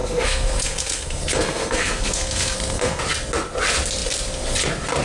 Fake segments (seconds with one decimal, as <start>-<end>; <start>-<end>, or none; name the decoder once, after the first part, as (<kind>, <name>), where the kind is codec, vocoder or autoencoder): 0.0-3.0 (codec, SNAC)

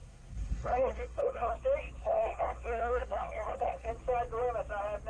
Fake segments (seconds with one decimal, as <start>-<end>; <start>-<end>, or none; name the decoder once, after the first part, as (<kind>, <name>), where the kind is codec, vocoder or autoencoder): 0.0-1.5 (codec, SNAC); 2.0-3.9

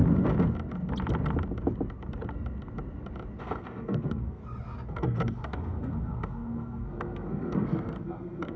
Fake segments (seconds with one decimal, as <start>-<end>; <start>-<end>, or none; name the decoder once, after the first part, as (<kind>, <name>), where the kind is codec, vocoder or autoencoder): 3.4-4.4 (codec, SNAC); 4.9-8.6

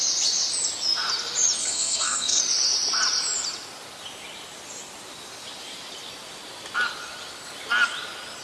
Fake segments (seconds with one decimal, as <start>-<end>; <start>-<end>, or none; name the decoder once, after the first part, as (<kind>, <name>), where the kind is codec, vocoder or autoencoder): 1.6-2.4 (codec, SNAC)

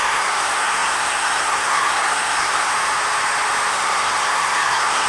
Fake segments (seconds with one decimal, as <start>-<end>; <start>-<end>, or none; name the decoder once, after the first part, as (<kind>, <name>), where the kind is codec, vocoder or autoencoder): 0.0-2.7 (codec, SNAC); 3.7-5.1